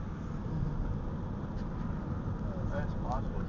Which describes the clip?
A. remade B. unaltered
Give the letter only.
B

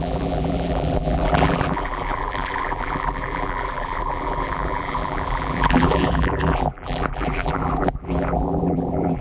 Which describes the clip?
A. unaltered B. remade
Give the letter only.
B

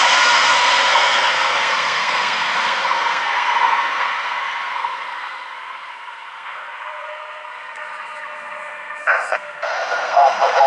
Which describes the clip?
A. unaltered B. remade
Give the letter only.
B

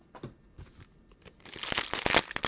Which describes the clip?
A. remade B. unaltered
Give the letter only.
B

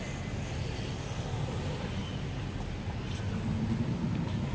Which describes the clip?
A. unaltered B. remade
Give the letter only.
A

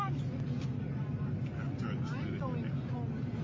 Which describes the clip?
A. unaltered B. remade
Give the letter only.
A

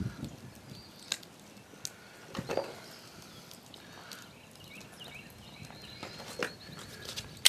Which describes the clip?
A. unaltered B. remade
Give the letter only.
A